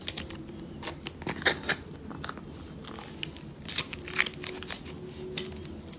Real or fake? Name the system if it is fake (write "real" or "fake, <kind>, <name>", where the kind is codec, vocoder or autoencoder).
real